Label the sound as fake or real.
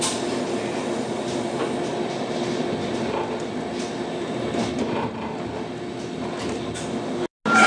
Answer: real